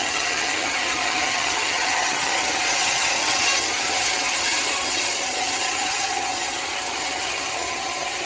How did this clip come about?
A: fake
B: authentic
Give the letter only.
A